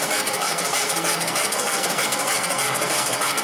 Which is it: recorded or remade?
remade